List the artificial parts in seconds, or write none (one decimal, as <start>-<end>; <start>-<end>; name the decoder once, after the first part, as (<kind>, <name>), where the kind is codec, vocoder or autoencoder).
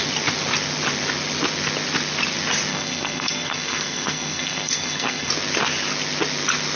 2.7-5.3 (codec, SNAC)